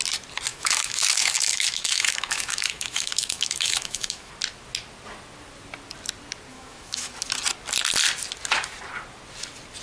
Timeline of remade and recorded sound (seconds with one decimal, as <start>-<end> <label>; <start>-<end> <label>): 0.0-0.5 recorded; 0.5-4.3 remade; 4.3-6.5 recorded; 6.5-7.1 remade; 7.1-9.8 recorded

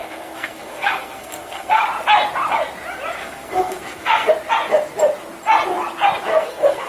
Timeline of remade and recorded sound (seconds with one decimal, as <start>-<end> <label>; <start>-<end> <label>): 0.0-1.8 remade; 1.8-3.2 recorded; 3.2-4.3 remade; 4.3-6.3 recorded; 6.3-6.9 remade